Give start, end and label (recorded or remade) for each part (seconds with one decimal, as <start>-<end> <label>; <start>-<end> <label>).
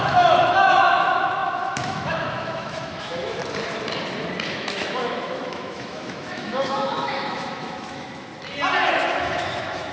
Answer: 0.0-3.4 remade; 3.4-4.5 recorded; 4.5-8.3 remade; 8.3-8.9 recorded; 8.9-9.9 remade